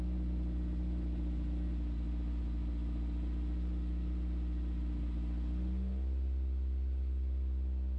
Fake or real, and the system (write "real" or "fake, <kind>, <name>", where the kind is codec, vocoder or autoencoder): real